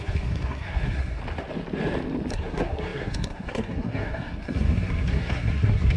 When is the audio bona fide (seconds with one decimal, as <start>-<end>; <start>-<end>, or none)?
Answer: 1.2-2.3